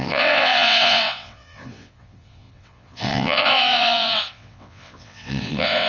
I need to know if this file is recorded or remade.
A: remade